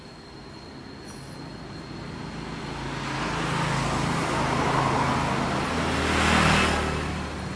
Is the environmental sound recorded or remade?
recorded